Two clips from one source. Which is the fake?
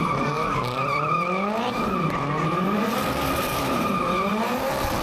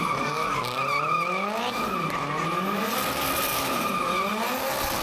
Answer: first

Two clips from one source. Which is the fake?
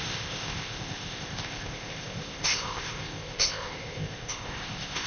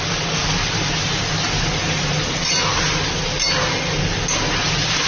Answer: first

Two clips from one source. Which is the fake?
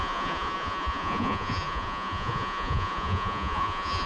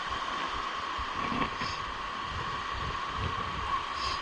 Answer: first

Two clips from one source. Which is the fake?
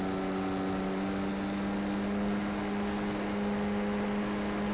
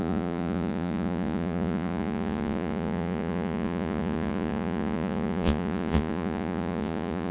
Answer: second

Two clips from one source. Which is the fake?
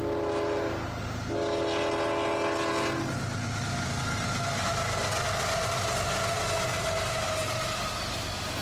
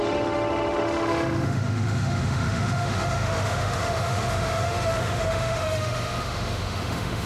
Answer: second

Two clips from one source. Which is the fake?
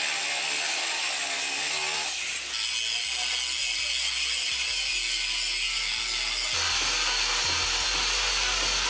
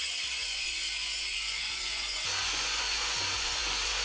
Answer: second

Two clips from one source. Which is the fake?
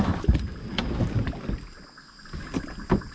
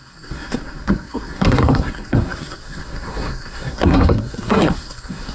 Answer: second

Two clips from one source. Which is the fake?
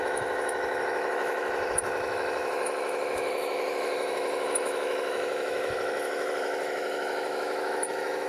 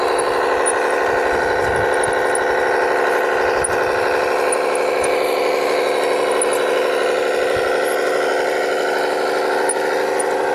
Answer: first